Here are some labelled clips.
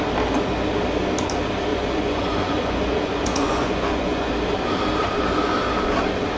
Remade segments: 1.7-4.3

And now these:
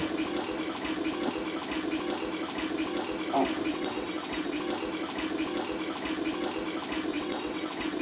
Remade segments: 3.7-4.6; 7.1-8.0